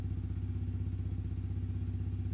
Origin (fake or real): real